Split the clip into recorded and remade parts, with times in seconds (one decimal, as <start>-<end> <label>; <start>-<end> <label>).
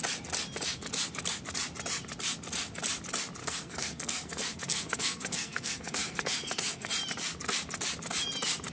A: 0.0-3.4 recorded; 3.4-6.9 remade; 6.9-8.7 recorded